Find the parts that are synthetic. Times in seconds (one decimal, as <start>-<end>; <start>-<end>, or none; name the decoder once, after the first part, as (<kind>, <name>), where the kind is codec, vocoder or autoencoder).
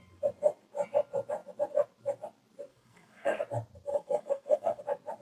2.7-3.4 (codec, SNAC); 3.9-4.8